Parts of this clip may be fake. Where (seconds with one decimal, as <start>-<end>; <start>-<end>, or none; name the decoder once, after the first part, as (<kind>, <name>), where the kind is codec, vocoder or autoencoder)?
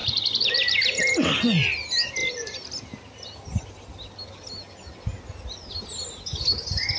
none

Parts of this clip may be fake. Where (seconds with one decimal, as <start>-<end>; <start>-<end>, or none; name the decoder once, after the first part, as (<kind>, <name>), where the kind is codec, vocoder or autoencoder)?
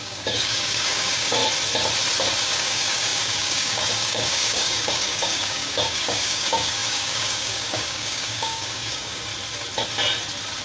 0.0-1.4 (codec, DAC); 2.4-9.3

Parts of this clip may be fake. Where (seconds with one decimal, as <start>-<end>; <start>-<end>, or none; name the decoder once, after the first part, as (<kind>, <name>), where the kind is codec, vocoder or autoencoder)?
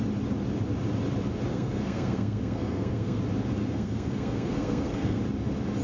1.5-3.2 (codec, SNAC); 3.6-5.2